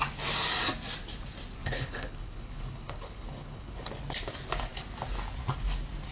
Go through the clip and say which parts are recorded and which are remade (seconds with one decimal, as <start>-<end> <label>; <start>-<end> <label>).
0.0-1.6 recorded; 1.6-3.9 remade; 3.9-6.1 recorded